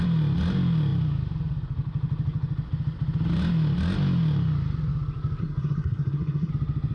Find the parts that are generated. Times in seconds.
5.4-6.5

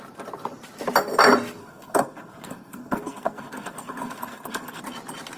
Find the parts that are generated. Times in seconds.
1.6-4.8

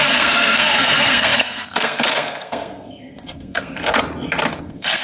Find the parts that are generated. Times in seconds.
0.0-3.8; 4.6-5.0

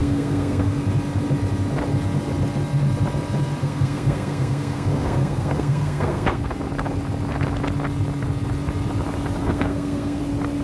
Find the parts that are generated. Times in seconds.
0.0-0.8; 3.6-6.5; 9.4-10.2